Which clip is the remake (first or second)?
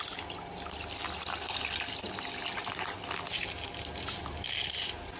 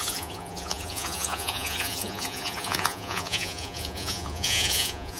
second